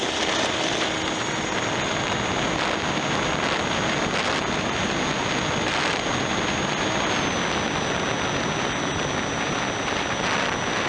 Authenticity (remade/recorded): recorded